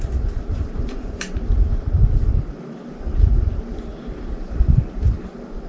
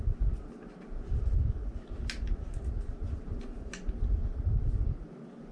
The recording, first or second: second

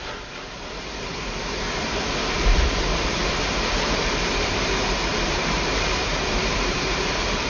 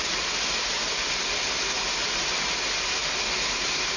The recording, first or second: second